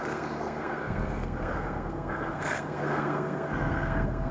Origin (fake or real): fake